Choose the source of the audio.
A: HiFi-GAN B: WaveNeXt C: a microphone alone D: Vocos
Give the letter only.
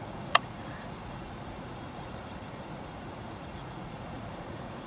D